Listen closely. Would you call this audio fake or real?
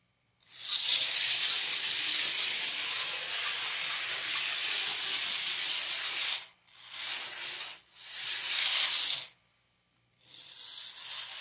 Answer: real